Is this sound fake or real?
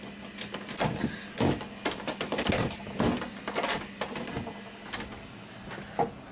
real